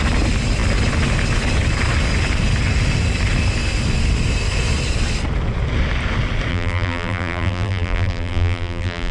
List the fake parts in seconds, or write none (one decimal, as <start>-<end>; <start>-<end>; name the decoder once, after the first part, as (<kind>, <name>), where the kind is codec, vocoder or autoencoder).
6.5-9.1 (vocoder, BigVGAN v2)